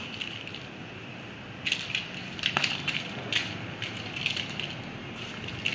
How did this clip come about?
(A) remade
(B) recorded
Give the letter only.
B